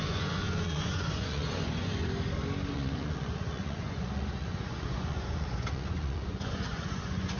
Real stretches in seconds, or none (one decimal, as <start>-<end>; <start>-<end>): 2.0-2.7